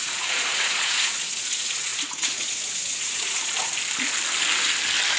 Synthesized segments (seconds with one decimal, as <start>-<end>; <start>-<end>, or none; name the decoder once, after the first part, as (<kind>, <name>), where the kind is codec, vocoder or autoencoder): 0.0-3.7 (vocoder, Vocos)